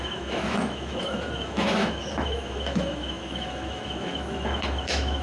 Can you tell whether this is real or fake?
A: fake